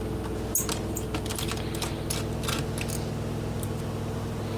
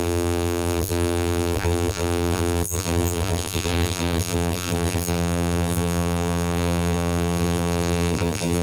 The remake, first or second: second